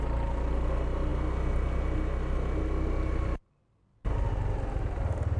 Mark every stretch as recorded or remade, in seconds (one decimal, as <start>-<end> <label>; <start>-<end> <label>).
0.0-5.4 recorded